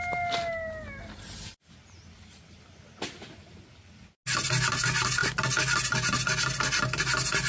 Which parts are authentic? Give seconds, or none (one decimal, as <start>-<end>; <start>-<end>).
0.0-7.5